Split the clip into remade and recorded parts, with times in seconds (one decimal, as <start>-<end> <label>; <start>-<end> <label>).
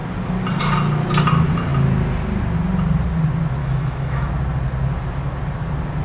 0.0-3.6 recorded; 3.6-4.3 remade; 4.3-6.0 recorded